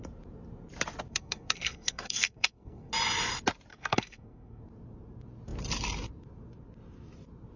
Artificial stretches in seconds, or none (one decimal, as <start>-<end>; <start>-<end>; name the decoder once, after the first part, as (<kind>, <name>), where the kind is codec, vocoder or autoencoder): 1.1-2.9 (codec, SNAC); 3.7-4.6